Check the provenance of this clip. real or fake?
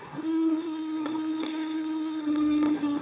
fake